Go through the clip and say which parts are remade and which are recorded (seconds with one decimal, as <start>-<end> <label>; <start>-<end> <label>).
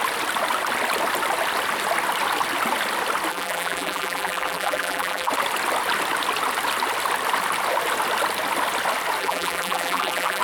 0.0-3.3 recorded; 3.3-5.3 remade; 5.3-9.2 recorded; 9.2-10.4 remade